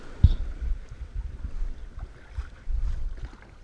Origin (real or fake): real